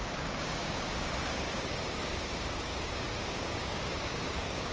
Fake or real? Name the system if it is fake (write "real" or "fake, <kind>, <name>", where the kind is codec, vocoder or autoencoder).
fake, codec, DAC